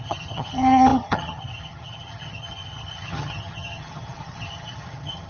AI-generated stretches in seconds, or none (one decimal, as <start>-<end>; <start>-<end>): 0.0-5.3